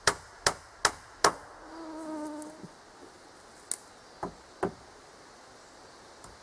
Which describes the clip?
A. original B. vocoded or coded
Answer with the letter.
A